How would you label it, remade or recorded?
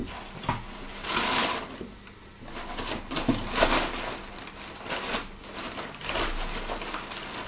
recorded